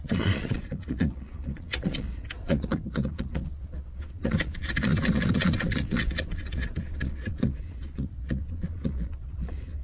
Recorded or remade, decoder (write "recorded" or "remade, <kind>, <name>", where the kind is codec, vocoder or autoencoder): remade, vocoder, Vocos